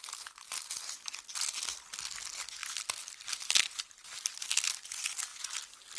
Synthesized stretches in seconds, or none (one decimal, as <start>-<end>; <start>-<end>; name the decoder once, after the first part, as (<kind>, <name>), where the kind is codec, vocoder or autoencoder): none